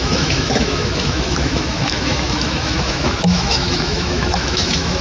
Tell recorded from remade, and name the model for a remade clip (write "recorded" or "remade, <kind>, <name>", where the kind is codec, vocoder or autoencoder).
remade, autoencoder, DAC-VAE